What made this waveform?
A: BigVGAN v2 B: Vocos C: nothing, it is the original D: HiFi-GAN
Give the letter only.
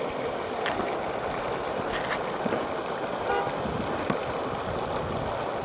C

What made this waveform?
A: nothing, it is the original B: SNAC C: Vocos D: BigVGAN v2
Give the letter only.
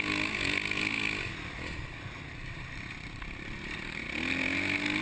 A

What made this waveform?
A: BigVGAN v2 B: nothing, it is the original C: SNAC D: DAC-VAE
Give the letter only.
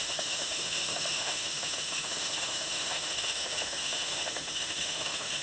D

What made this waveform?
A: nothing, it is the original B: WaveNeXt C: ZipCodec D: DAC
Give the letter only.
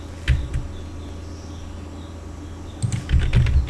A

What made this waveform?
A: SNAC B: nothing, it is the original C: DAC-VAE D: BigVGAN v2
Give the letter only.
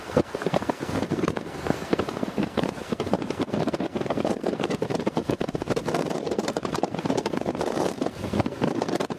A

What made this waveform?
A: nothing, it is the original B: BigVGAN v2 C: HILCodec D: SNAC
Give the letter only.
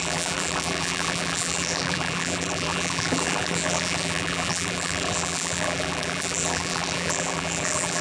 B